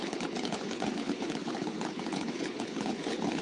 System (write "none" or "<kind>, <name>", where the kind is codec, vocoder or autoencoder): codec, HILCodec